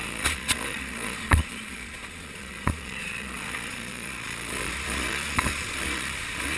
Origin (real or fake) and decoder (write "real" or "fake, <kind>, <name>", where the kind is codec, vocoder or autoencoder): fake, vocoder, Vocos